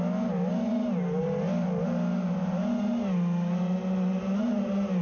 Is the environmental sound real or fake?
real